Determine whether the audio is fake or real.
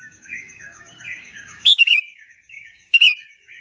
fake